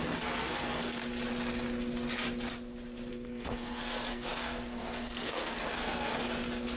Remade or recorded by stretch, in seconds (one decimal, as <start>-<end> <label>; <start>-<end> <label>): 0.0-1.0 remade; 1.0-3.1 recorded; 3.1-6.1 remade; 6.1-6.8 recorded